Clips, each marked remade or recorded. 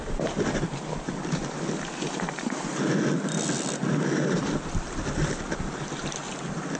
recorded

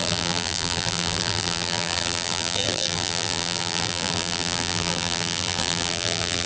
remade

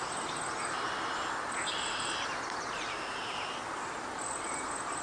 recorded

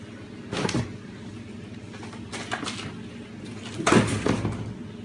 recorded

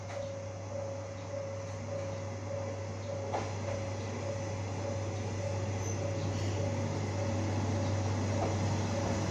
recorded